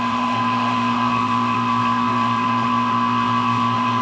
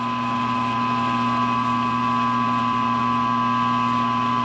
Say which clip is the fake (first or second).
first